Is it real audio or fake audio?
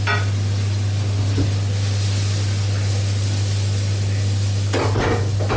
real